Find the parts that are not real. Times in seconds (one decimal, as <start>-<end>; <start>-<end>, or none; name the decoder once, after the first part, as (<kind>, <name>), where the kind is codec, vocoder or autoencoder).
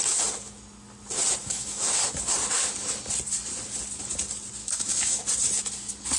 1.4-1.9 (autoencoder, DAC-VAE); 4.6-5.2